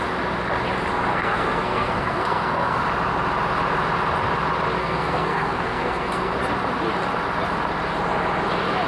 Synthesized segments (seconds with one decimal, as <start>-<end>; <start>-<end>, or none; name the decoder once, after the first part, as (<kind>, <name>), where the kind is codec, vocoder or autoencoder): 1.1-2.8 (codec, SNAC); 4.8-6.4